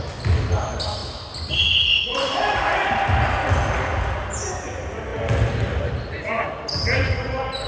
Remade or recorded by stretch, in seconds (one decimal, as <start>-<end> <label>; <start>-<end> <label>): 0.0-7.7 recorded